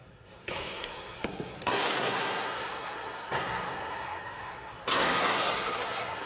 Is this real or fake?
fake